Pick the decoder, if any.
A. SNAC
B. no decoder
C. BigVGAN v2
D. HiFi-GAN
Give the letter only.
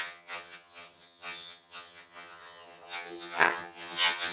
D